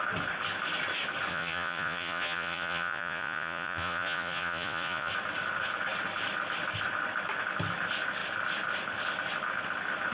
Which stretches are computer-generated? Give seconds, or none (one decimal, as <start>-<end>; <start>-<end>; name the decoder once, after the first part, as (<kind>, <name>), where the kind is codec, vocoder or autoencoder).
1.3-5.1 (vocoder, Vocos)